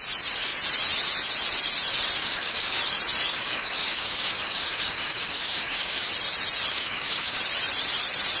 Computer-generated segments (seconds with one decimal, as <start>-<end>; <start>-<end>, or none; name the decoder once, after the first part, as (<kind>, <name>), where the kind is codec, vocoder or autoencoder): 2.2-2.8 (codec, DAC); 3.3-6.1; 6.7-7.4